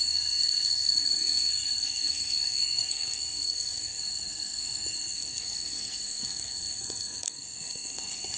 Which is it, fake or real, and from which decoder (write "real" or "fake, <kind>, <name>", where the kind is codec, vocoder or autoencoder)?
fake, codec, SNAC